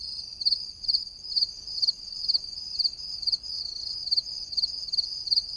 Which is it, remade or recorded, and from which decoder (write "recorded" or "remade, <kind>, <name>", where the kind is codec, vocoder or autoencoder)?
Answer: recorded